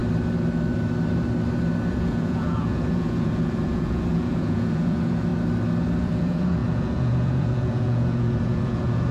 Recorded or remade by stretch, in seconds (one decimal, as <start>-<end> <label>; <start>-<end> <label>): 0.0-1.9 recorded; 1.9-5.3 remade; 5.3-6.0 recorded; 6.0-9.1 remade